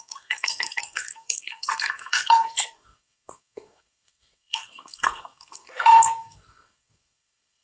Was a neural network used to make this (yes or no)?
yes